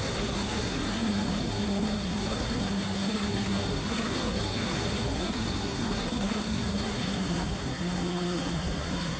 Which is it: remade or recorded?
remade